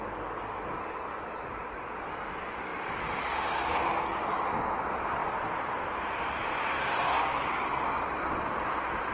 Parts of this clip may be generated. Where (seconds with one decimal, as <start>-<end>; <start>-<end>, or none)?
5.2-6.5